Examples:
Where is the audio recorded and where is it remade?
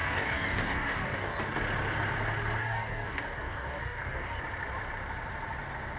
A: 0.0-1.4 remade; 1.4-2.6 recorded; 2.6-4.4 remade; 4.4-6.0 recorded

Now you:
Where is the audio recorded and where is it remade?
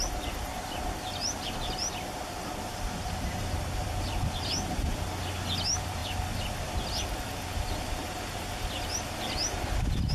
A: 0.0-2.7 recorded; 2.7-4.5 remade; 4.5-10.1 recorded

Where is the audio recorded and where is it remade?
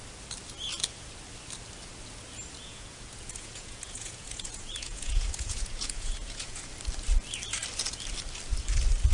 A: 0.0-2.6 recorded; 2.6-6.7 remade; 6.7-9.1 recorded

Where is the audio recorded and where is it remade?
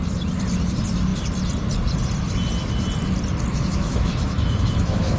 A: 0.0-3.5 recorded; 3.5-5.2 remade